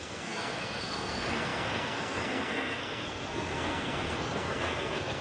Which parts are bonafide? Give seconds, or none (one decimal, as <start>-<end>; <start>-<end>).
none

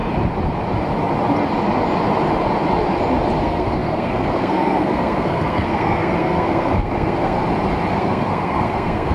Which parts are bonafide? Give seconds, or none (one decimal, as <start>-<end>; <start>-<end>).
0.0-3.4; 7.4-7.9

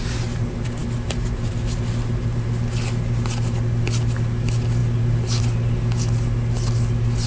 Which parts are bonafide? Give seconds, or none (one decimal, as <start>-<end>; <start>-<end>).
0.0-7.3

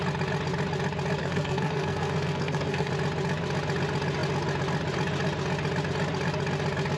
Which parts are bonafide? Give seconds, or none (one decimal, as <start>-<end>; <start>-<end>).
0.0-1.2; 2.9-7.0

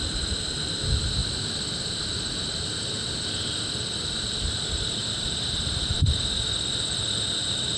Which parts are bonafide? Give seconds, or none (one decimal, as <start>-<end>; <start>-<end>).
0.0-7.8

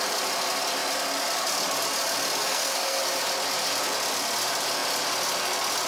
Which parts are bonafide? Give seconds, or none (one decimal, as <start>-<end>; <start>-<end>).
0.0-2.4; 3.0-5.9